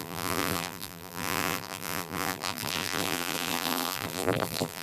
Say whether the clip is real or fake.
fake